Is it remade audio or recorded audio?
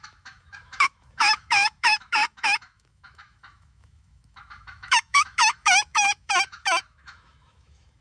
remade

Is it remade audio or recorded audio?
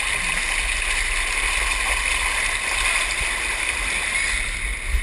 recorded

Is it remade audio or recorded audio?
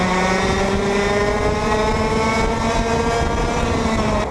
recorded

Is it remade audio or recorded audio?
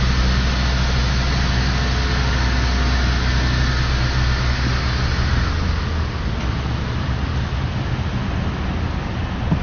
recorded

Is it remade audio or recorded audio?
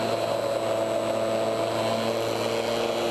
recorded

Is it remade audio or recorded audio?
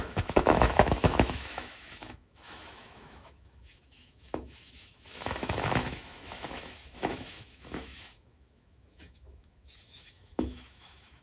remade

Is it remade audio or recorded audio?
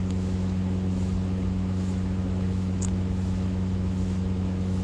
remade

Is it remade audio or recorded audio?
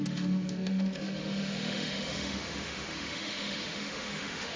remade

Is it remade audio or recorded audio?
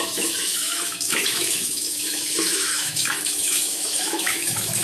remade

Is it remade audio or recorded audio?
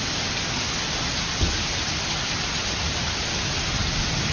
recorded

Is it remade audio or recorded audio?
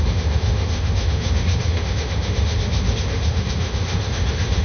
remade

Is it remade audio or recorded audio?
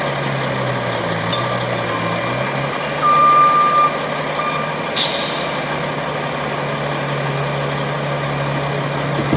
recorded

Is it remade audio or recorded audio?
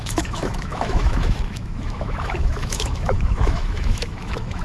remade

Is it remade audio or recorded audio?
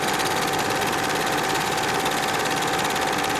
recorded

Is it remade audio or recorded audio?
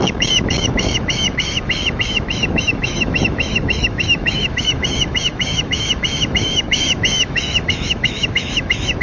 remade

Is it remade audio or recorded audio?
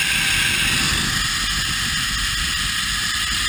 recorded